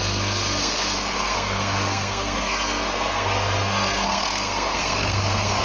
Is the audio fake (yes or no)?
yes